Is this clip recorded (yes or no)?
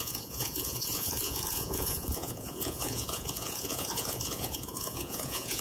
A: no